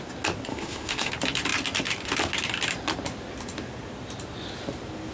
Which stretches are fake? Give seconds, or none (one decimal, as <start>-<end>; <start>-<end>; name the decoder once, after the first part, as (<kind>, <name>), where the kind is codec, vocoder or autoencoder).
0.5-1.1 (autoencoder, DAC-VAE)